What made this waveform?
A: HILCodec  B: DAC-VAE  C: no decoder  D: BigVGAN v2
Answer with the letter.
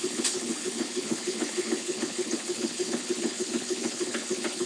A